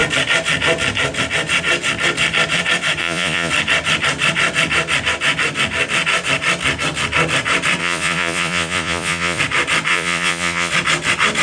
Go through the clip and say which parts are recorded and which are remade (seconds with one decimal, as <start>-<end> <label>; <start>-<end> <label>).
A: 0.0-3.0 recorded; 3.0-3.5 remade; 3.5-7.8 recorded; 7.8-9.4 remade; 9.4-9.9 recorded; 9.9-10.7 remade; 10.7-11.4 recorded